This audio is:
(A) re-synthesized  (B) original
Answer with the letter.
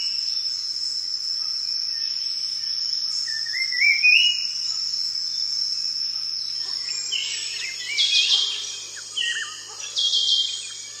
B